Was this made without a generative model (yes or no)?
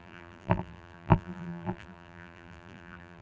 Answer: no